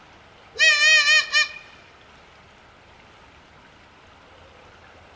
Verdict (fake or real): real